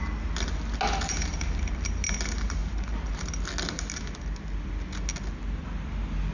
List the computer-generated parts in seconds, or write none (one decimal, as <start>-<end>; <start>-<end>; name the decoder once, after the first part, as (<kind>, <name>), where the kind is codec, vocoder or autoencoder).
1.3-1.8 (vocoder, BigVGAN v2); 2.6-3.2